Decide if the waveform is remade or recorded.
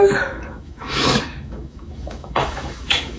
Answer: remade